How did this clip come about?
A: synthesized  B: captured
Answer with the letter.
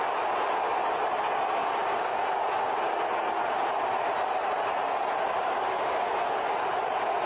B